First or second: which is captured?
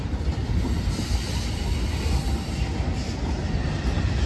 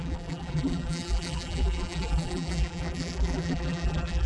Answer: first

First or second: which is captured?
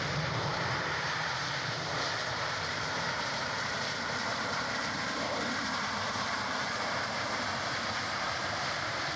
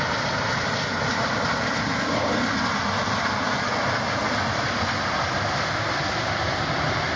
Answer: second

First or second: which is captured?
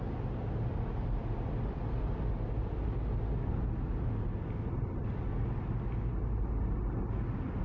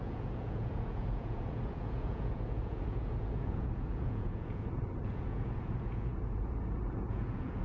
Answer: first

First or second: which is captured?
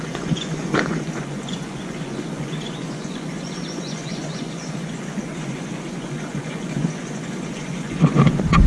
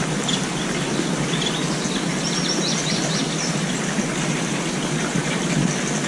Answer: second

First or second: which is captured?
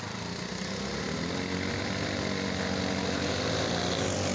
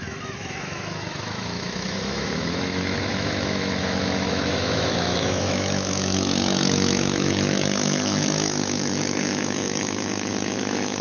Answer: first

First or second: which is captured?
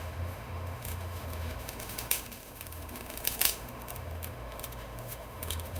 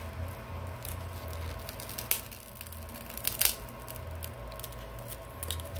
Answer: second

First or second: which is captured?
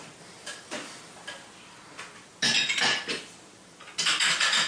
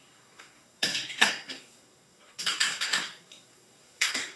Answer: first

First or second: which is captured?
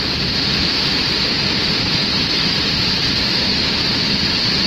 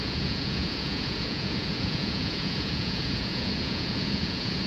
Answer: first